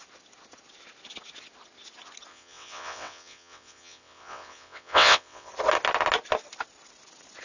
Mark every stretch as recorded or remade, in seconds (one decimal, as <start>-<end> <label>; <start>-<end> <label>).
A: 0.0-2.3 recorded; 2.3-5.5 remade; 5.5-7.4 recorded